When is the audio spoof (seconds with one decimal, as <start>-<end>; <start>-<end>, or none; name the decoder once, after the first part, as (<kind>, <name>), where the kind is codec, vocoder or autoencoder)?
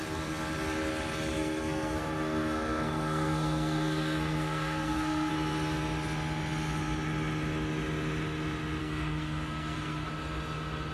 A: 1.3-5.3 (codec, SNAC); 8.8-10.1